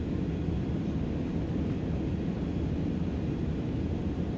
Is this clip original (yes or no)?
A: yes